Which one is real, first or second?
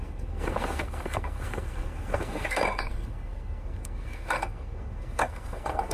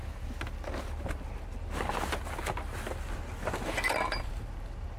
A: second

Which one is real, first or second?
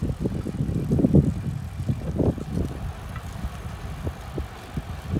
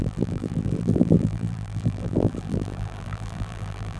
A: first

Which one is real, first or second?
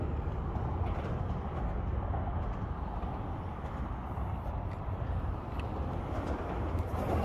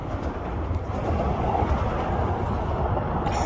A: first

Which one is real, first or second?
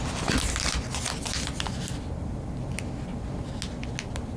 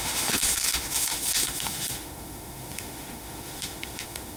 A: first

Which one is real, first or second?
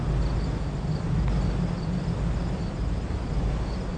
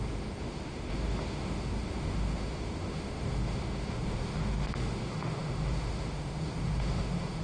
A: first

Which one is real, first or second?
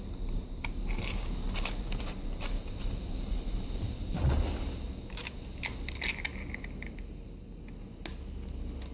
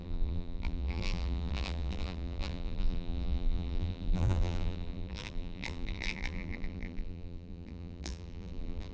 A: first